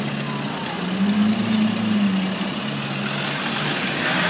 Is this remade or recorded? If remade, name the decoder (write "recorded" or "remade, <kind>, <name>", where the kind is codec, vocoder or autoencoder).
recorded